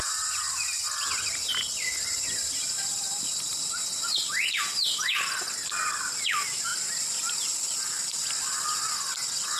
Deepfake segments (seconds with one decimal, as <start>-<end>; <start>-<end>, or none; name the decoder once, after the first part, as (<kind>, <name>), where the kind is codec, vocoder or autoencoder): none